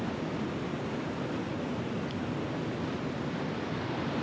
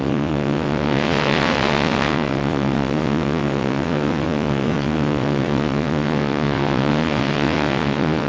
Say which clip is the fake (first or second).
second